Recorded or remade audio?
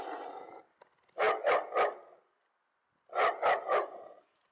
recorded